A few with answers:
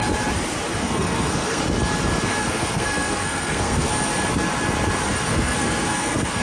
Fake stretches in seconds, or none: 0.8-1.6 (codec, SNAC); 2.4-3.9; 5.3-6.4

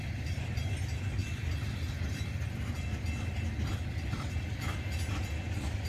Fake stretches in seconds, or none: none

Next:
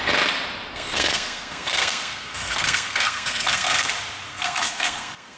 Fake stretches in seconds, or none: 0.7-3.9 (codec, SNAC); 4.3-5.4